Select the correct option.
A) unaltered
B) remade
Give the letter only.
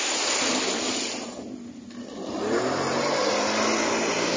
A